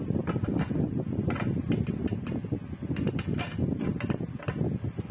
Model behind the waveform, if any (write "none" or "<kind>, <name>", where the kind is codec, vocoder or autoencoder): none